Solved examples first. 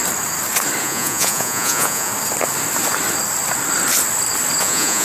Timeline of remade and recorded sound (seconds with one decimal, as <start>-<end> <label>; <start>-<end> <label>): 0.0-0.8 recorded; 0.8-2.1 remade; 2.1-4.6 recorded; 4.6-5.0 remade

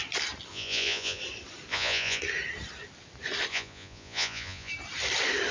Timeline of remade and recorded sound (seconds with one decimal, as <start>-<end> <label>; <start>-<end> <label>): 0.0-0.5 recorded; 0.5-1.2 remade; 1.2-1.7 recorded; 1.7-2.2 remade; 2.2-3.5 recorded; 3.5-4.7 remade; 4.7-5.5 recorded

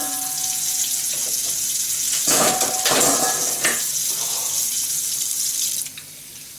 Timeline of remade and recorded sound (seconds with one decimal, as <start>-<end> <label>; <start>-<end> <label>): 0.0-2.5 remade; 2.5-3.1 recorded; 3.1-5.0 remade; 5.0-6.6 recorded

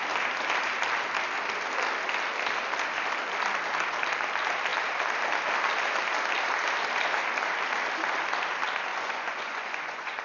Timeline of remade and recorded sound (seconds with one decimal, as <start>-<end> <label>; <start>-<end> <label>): 0.0-8.9 recorded; 8.9-10.2 remade

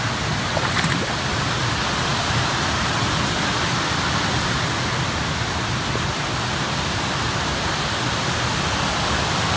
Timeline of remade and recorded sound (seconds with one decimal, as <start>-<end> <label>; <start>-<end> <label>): 0.0-9.6 recorded